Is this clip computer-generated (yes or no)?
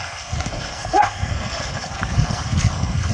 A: yes